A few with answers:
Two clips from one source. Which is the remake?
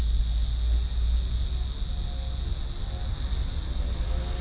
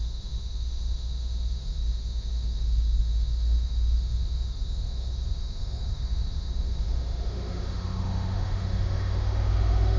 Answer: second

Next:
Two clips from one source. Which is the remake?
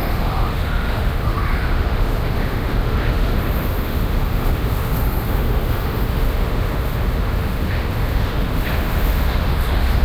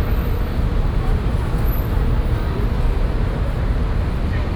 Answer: first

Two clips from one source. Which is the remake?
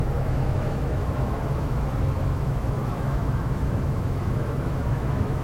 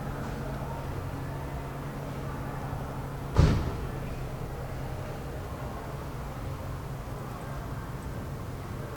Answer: first